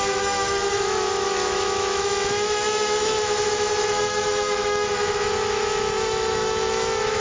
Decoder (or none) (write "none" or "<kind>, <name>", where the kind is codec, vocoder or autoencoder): autoencoder, DAC-VAE